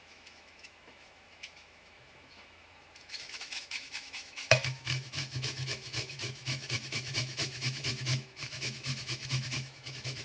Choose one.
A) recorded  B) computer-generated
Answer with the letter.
B